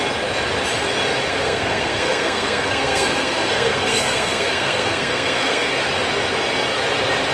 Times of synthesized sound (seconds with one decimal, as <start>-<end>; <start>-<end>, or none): 1.3-5.7